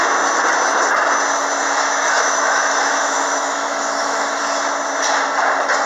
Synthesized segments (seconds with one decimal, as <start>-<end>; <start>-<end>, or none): 1.6-4.4